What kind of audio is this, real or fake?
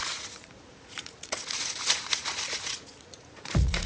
fake